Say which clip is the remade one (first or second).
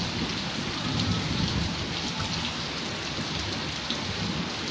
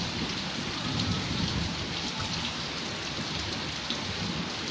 second